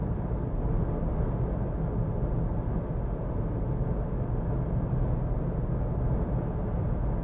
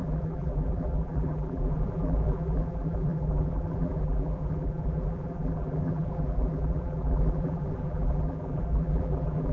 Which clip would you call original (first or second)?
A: first